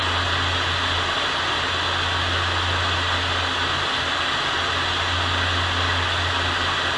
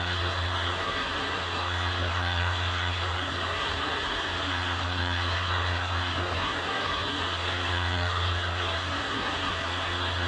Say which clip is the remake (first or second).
second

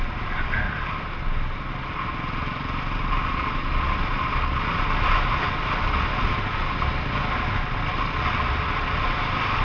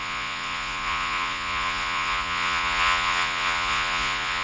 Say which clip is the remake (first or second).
second